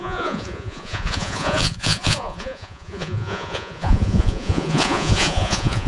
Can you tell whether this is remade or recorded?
remade